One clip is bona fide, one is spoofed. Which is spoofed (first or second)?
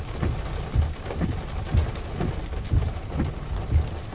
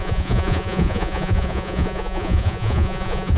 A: second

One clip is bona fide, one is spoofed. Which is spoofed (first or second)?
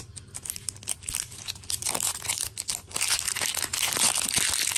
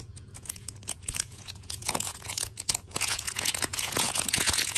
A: second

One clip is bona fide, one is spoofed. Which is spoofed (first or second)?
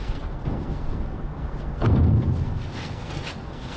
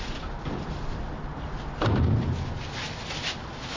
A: first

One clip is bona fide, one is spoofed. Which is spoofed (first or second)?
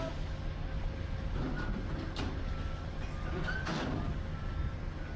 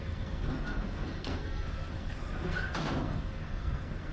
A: second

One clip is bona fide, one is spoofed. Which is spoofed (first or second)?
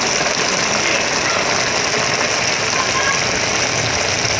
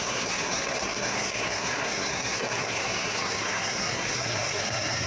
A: second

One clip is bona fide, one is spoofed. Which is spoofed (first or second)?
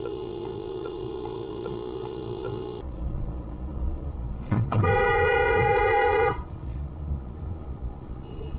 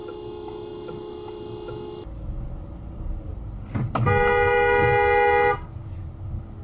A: first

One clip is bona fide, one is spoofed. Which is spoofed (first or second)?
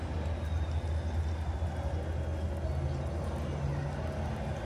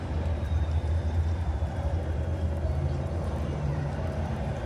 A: second